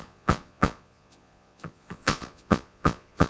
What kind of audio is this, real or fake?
fake